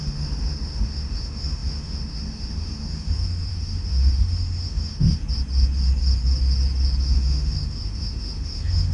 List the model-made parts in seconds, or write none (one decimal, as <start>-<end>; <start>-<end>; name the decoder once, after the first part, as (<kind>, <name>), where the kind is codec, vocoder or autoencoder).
0.0-5.2 (autoencoder, DAC-VAE); 7.0-8.9